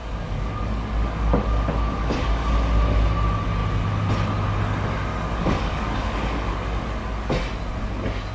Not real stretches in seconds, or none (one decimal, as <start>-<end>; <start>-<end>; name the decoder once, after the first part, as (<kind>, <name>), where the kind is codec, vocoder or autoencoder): 0.0-2.5 (codec, DAC); 5.1-7.0